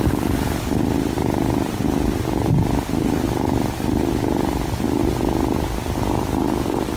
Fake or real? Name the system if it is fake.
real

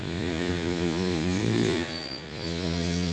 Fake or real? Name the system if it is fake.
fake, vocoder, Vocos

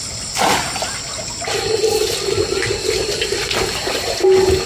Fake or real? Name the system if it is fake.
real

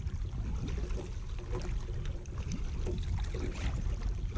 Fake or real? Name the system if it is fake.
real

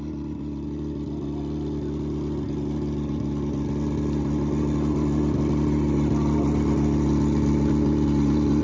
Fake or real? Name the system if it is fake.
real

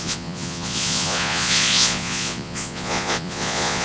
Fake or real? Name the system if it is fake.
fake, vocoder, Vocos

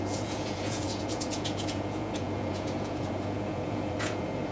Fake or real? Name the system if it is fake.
fake, vocoder, Vocos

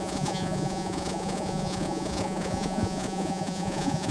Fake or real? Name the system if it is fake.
fake, vocoder, Vocos